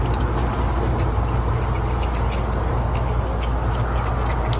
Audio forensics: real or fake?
real